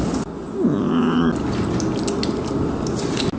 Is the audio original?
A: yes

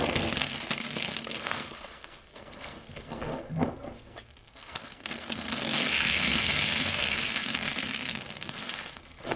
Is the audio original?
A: no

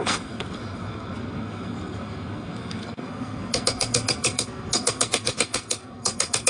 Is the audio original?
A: no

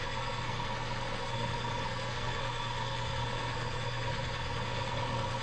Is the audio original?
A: no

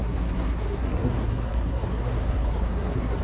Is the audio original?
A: no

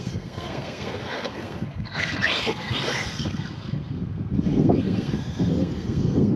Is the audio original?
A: no